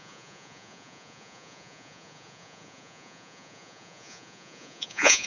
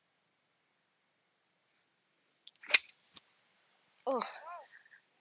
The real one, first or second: second